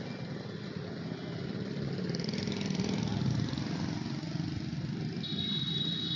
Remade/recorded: recorded